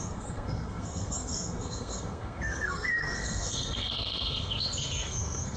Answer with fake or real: fake